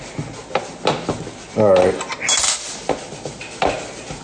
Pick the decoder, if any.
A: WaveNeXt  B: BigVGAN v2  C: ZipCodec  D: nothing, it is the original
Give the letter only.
D